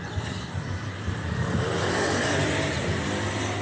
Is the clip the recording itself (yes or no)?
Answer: no